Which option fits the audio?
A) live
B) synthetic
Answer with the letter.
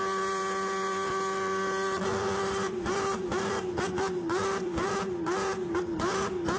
B